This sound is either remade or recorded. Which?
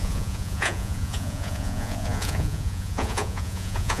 remade